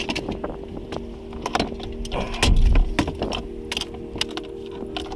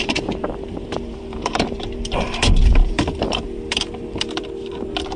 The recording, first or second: first